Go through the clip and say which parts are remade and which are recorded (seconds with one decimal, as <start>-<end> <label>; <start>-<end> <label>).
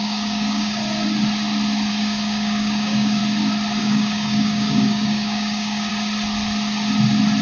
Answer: 0.0-0.8 remade; 0.8-1.9 recorded; 1.9-3.2 remade; 3.2-3.8 recorded; 3.8-5.9 remade; 5.9-7.4 recorded